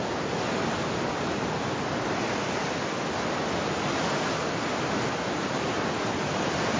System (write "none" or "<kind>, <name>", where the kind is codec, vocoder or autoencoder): none